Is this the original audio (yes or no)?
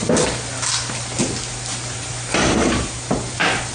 yes